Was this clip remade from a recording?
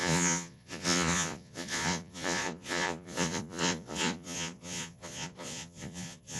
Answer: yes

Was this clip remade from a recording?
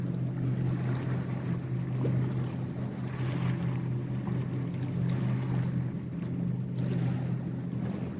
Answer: no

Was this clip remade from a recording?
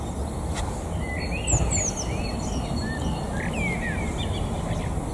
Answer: no